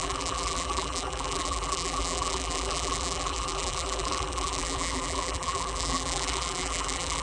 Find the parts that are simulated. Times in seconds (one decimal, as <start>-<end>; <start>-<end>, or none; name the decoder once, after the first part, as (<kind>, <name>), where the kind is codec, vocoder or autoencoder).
0.0-7.2 (vocoder, BigVGAN v2)